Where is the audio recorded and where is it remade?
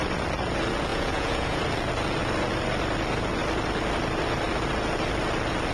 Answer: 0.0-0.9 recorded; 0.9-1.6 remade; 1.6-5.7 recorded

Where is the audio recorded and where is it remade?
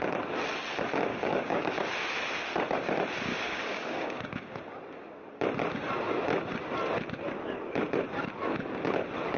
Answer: 0.0-1.1 recorded; 1.1-1.7 remade; 1.7-3.3 recorded; 3.3-4.6 remade; 4.6-9.4 recorded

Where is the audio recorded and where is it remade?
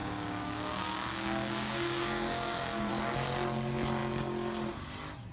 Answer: 0.0-2.9 remade; 2.9-5.3 recorded